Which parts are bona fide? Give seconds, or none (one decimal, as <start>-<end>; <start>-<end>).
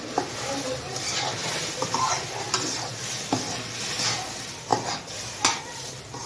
0.0-6.3